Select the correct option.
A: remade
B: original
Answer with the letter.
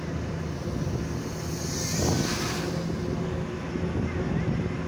B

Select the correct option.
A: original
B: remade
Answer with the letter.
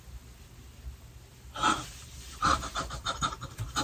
A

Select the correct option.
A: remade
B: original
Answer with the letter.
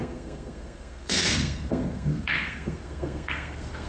A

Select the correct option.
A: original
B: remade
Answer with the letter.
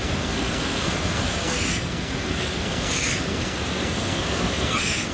B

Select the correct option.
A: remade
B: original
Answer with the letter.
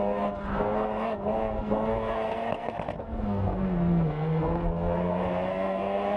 A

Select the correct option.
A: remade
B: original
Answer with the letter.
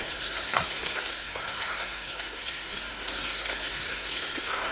A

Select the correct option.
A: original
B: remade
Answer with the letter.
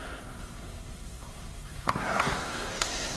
B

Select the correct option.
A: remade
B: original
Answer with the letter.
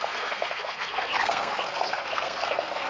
A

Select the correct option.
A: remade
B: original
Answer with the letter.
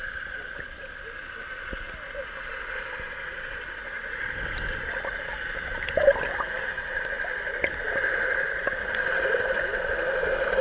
B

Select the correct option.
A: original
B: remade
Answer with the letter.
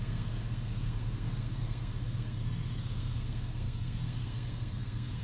B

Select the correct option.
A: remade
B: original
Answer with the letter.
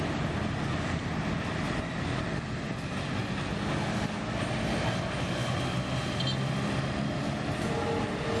B